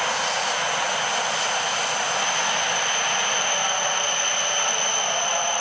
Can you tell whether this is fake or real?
real